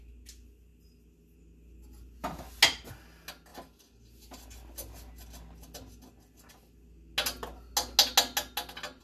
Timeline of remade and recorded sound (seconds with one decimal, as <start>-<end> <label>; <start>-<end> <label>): 0.0-9.0 recorded